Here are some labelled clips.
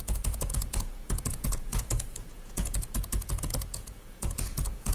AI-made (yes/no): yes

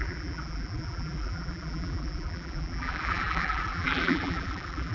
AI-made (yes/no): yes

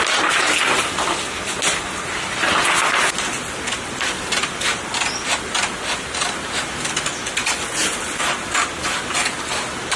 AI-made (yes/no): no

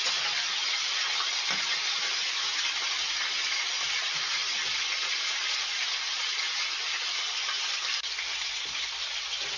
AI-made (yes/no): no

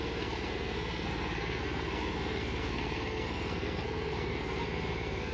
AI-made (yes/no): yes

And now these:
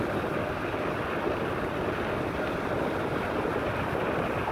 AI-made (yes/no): no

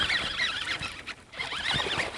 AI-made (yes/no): no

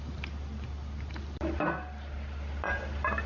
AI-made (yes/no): yes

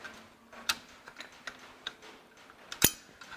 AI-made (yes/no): no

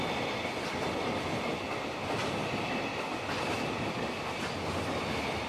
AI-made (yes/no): no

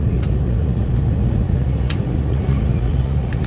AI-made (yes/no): yes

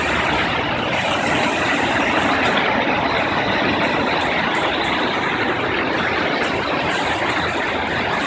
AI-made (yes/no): no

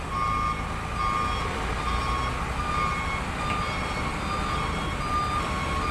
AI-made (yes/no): no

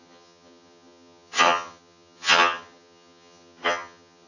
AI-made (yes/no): yes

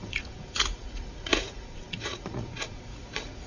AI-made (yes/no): yes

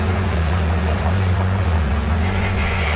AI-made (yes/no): yes